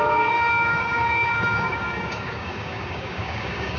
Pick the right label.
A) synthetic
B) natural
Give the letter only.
A